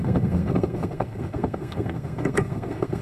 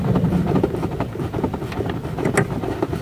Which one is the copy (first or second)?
first